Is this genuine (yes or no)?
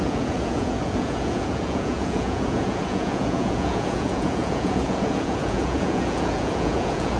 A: no